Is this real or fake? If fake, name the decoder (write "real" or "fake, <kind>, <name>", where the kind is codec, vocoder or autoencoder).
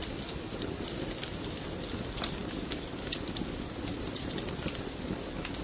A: real